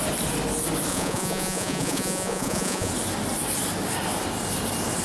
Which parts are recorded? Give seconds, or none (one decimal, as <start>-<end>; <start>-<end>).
0.0-0.9; 2.9-5.0